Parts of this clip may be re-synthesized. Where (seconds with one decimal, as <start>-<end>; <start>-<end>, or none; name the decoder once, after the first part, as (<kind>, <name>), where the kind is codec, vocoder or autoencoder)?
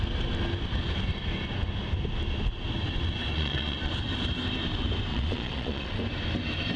3.3-3.9 (vocoder, Vocos); 5.1-6.0